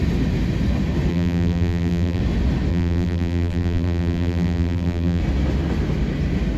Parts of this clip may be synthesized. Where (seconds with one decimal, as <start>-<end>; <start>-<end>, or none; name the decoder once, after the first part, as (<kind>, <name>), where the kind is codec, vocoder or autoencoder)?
1.1-2.2 (vocoder, BigVGAN v2); 2.7-5.2